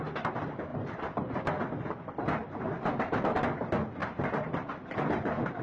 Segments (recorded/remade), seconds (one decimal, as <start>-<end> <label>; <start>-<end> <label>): 0.0-0.7 recorded; 0.7-1.4 remade; 1.4-4.0 recorded; 4.0-5.6 remade